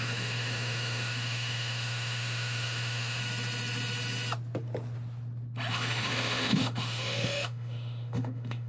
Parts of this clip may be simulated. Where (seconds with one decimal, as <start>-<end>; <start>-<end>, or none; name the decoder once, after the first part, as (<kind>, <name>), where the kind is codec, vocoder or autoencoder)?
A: 0.0-3.2 (autoencoder, DAC-VAE); 5.7-8.7